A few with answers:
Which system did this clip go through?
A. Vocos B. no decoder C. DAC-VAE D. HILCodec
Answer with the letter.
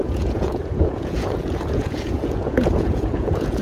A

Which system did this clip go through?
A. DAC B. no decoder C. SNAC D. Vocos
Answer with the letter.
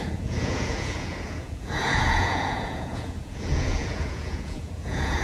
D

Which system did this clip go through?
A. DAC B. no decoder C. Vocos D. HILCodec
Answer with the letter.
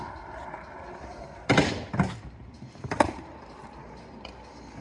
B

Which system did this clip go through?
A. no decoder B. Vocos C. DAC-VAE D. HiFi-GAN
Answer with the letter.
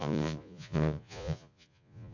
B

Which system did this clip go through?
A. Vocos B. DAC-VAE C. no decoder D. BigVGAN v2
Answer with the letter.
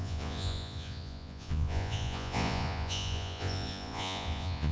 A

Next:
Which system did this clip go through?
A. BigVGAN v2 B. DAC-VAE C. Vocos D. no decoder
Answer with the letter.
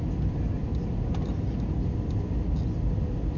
D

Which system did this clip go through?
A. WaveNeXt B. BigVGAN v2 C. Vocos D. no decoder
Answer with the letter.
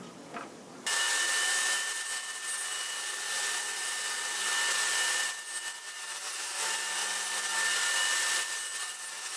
D